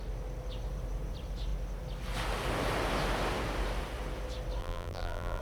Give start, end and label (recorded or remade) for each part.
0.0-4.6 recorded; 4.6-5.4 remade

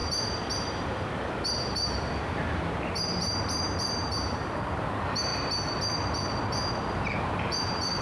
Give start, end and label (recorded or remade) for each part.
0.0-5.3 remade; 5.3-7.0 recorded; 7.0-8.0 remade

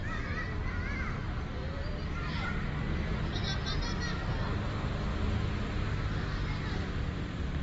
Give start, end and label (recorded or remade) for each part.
0.0-1.6 recorded; 1.6-3.2 remade; 3.2-7.6 recorded

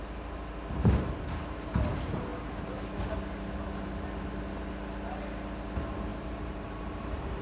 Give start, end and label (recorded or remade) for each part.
0.0-1.7 remade; 1.7-6.1 recorded; 6.1-7.4 remade

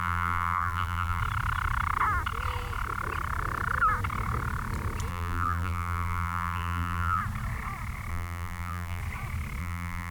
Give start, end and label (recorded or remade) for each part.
0.0-1.2 remade; 1.2-5.1 recorded; 5.1-7.2 remade; 7.2-8.1 recorded; 8.1-9.0 remade; 9.0-9.6 recorded; 9.6-10.1 remade